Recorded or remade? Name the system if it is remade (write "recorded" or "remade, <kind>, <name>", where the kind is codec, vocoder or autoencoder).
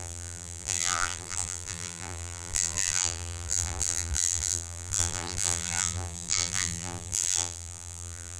remade, vocoder, BigVGAN v2